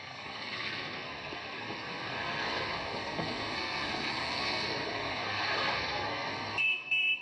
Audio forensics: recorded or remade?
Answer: remade